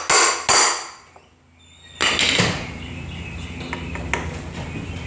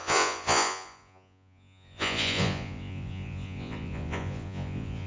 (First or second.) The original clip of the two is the first